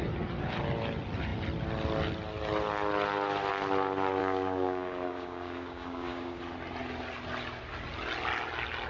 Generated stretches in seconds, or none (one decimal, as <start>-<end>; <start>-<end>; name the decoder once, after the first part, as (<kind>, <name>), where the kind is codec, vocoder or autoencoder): 4.2-6.4 (codec, DAC)